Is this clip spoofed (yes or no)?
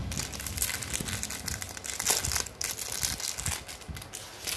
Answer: no